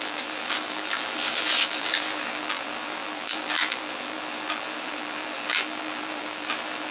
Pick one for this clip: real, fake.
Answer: fake